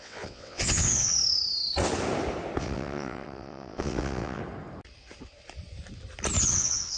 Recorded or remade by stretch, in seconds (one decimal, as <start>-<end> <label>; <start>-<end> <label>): 0.0-1.1 remade; 1.1-2.6 recorded; 2.6-4.4 remade; 4.4-6.4 recorded; 6.4-7.0 remade

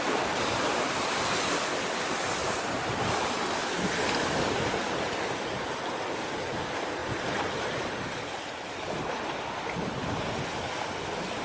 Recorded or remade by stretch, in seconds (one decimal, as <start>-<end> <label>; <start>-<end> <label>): 0.0-2.4 remade; 2.4-4.8 recorded; 4.8-7.0 remade; 7.0-7.7 recorded; 7.7-11.4 remade

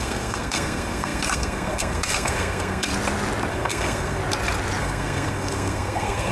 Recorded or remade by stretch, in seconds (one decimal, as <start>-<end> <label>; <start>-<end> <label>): 0.0-2.9 remade; 2.9-3.5 recorded; 3.5-4.2 remade; 4.2-4.8 recorded; 4.8-6.3 remade

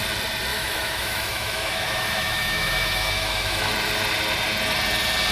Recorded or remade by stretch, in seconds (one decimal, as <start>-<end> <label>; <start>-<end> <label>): 0.0-0.5 recorded; 0.5-3.7 remade; 3.7-5.3 recorded

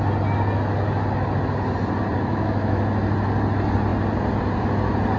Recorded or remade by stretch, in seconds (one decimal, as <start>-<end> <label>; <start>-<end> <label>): 0.0-2.3 recorded; 2.3-2.8 remade; 2.8-5.2 recorded

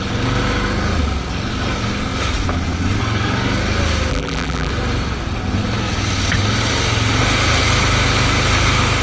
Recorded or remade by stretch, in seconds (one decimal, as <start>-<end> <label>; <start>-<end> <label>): 0.0-4.1 recorded; 4.1-4.7 remade; 4.7-9.0 recorded

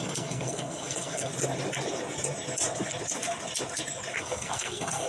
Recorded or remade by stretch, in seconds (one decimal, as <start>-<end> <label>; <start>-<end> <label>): 0.0-1.3 remade; 1.3-4.2 recorded; 4.2-5.1 remade